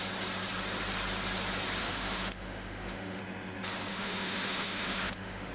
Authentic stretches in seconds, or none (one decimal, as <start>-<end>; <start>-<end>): 0.0-1.8; 3.2-3.9